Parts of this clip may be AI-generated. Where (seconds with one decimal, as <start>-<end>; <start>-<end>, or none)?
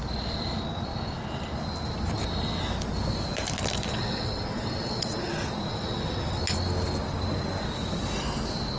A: 3.9-5.3; 5.7-6.4